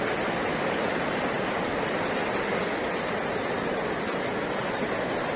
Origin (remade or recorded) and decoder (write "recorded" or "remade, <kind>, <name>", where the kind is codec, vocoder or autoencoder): recorded